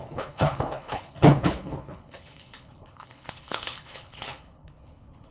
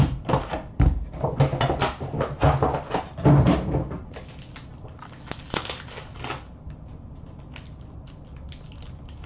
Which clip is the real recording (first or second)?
second